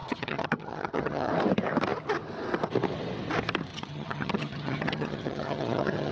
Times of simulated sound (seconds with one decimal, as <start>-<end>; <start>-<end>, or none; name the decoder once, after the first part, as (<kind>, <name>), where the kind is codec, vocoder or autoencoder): 0.0-1.3 (vocoder, HiFi-GAN); 3.7-6.1